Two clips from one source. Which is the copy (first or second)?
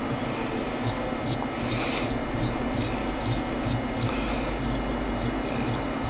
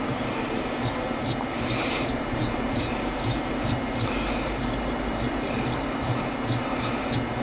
second